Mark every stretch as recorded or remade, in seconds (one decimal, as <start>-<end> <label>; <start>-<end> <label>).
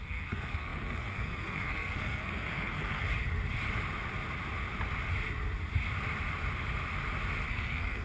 0.0-3.1 remade; 3.1-7.5 recorded; 7.5-8.0 remade